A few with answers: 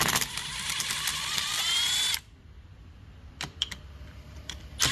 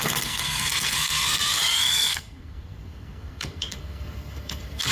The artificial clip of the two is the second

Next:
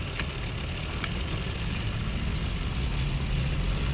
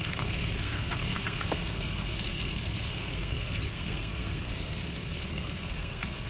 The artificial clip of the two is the second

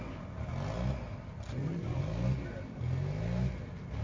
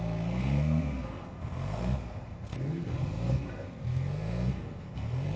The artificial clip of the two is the second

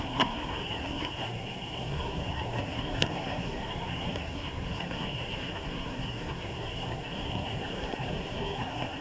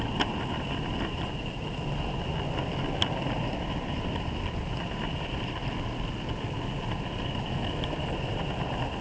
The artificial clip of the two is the first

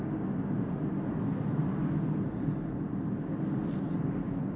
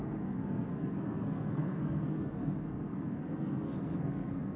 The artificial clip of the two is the second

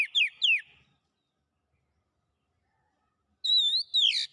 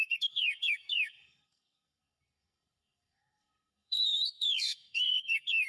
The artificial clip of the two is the second